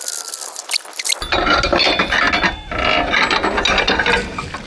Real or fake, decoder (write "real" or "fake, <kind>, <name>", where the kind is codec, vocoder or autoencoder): real